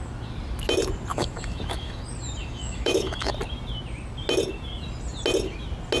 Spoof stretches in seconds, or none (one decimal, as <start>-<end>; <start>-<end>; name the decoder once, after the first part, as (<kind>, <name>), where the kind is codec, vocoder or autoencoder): 1.1-2.0 (autoencoder, DAC-VAE); 2.4-3.3